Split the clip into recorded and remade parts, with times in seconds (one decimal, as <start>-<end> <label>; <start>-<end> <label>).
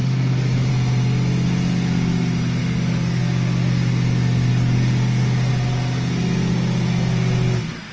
0.0-0.7 remade; 0.7-2.6 recorded; 2.6-3.2 remade; 3.2-4.5 recorded; 4.5-5.5 remade; 5.5-7.9 recorded